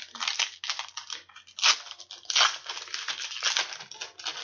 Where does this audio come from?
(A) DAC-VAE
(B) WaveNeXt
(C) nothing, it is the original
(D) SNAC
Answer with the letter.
C